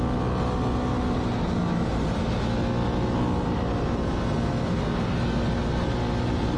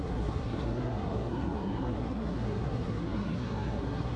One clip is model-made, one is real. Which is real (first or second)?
first